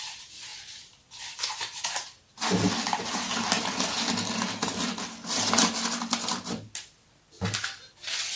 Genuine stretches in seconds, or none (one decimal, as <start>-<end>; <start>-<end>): 0.0-0.5; 1.4-8.4